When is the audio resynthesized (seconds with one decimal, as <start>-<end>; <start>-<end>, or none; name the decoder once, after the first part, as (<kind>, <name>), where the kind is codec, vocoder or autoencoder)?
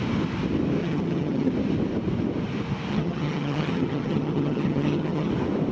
0.8-1.5 (vocoder, HiFi-GAN); 2.9-5.3